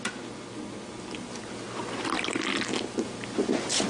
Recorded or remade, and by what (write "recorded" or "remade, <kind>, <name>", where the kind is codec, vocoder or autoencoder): recorded